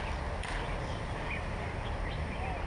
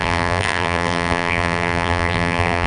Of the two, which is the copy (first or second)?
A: second